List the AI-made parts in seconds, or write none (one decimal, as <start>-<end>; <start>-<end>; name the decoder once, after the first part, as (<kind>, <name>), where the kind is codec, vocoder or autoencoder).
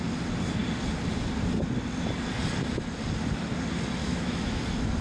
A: 4.0-4.6 (autoencoder, DAC-VAE)